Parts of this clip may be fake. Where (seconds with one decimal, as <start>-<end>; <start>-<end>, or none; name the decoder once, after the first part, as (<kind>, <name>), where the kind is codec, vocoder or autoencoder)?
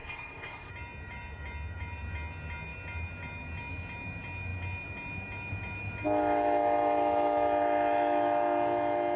0.0-0.7 (codec, ZipCodec)